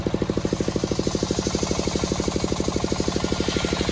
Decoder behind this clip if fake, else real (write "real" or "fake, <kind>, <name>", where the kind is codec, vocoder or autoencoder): real